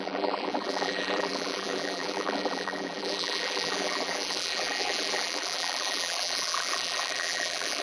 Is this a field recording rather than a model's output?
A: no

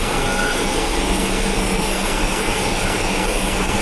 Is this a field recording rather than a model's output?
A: no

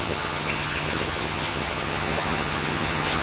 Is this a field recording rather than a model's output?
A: no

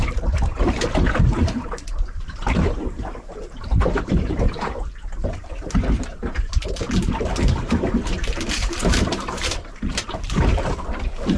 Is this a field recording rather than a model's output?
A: no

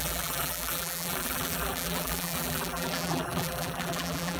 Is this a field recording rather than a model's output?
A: no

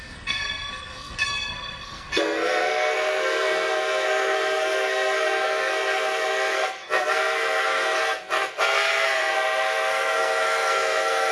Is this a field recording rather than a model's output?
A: no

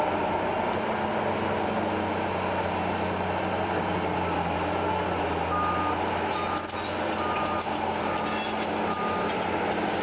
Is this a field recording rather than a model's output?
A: yes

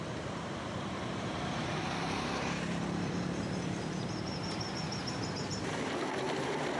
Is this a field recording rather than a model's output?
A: no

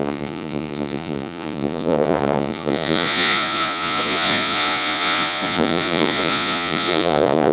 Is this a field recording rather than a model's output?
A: no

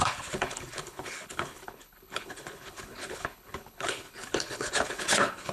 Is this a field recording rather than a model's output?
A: no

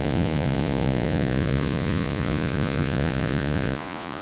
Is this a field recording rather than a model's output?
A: no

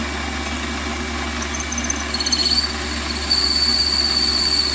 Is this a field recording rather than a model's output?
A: yes